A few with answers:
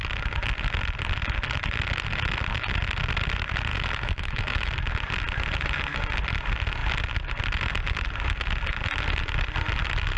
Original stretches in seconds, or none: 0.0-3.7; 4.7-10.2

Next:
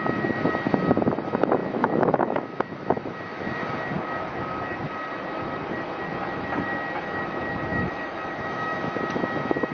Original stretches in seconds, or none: 0.0-1.6; 3.6-7.7; 9.0-9.7